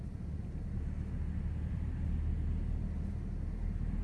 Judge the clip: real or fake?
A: real